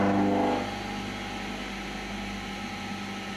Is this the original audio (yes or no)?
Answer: yes